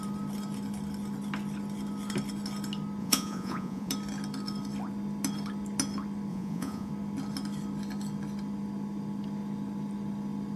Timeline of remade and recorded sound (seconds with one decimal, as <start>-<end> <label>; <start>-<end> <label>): 0.0-3.0 recorded; 3.0-3.9 remade; 3.9-6.3 recorded; 6.3-6.9 remade; 6.9-10.6 recorded